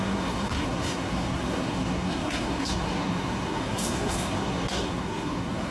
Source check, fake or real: fake